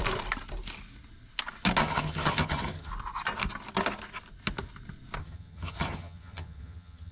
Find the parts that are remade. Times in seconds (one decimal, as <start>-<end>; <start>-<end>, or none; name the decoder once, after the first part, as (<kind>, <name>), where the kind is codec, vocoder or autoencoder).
1.8-2.9 (vocoder, HiFi-GAN); 5.2-7.1